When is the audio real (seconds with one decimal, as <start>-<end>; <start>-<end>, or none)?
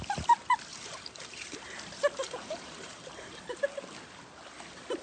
0.0-0.7; 1.7-2.2; 3.4-5.0